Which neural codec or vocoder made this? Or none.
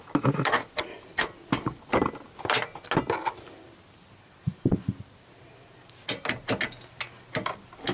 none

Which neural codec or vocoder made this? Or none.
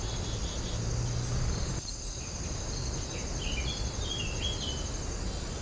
none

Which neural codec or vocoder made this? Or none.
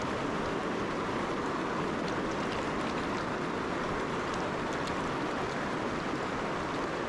none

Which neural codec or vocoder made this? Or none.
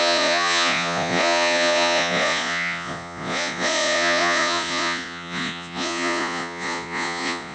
vocoder, Vocos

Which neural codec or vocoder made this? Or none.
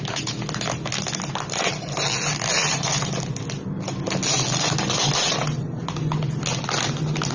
none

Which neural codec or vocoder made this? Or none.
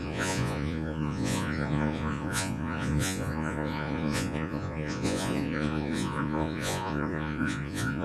vocoder, Vocos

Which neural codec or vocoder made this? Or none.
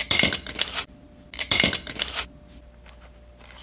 none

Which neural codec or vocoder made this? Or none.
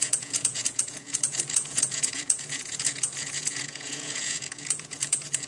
vocoder, Vocos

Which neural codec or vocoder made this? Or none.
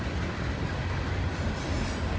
none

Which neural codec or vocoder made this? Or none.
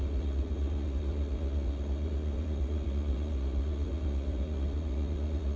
vocoder, Vocos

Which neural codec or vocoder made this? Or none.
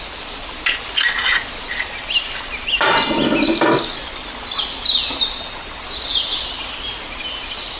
none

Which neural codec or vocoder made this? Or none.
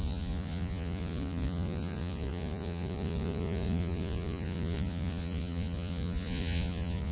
vocoder, Vocos